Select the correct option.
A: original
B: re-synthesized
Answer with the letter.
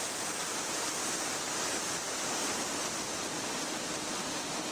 A